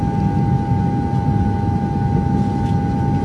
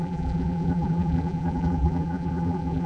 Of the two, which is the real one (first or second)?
first